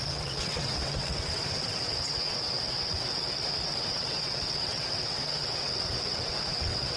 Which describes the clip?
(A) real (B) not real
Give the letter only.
B